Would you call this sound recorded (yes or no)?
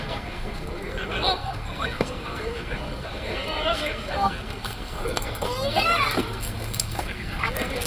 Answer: no